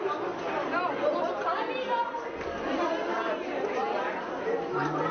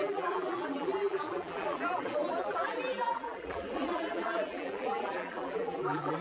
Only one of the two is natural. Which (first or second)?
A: first